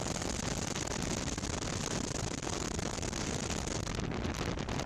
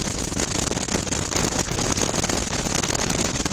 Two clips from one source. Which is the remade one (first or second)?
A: second